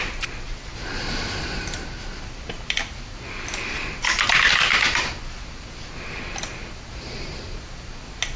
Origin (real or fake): real